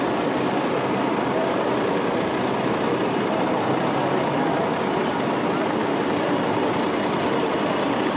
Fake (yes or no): no